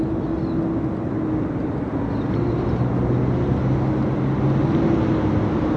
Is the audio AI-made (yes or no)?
no